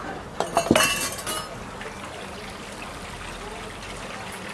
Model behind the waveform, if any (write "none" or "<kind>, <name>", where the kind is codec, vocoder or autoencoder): none